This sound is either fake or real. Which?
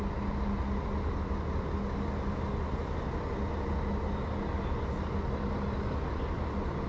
real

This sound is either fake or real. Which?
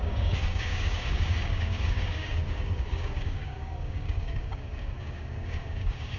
fake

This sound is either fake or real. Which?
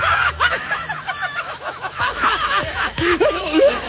fake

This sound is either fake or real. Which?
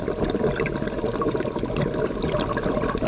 real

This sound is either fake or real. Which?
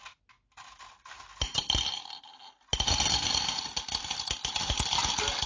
real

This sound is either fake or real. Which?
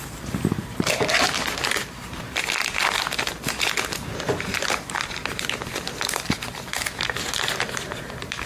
real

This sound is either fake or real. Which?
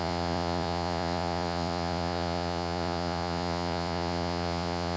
fake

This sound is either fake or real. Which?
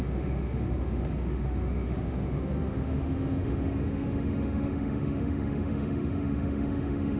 fake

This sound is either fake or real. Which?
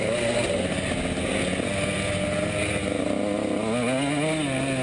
real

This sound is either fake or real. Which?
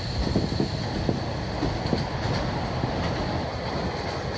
real